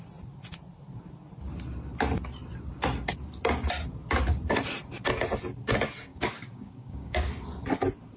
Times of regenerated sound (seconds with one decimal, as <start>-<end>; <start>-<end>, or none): 6.1-7.3